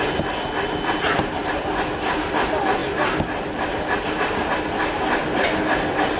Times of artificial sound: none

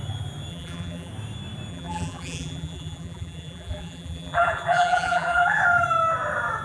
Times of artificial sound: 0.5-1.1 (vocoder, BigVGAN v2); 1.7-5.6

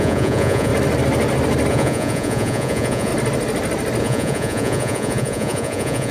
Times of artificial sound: 0.0-0.7 (vocoder, Vocos); 1.7-3.1; 4.0-6.1

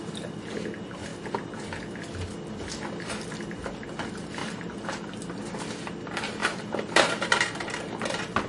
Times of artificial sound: 1.1-1.6 (vocoder, BigVGAN v2); 4.4-4.9; 6.4-7.6

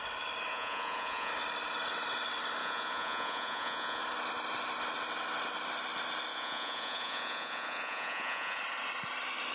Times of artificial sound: 0.5-1.3 (vocoder, Vocos); 2.6-4.0; 6.3-8.6

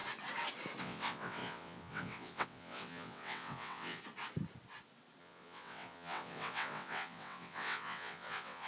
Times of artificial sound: 0.8-4.0 (vocoder, WaveNeXt); 5.2-8.7

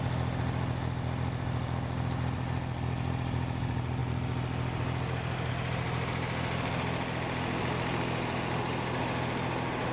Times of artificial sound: none